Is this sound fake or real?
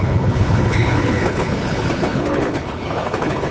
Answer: fake